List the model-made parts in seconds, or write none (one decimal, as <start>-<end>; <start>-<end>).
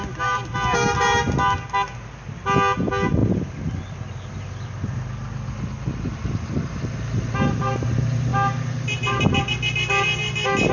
none